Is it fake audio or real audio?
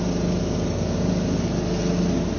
real